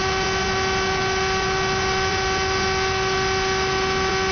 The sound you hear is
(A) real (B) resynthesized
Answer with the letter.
A